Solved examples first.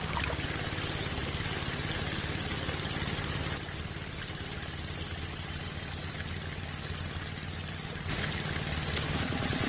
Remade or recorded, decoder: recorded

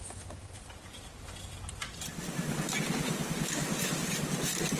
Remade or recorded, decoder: recorded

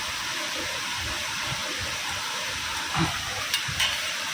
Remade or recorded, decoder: recorded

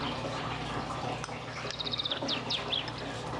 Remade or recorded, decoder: recorded